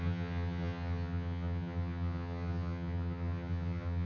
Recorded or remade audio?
remade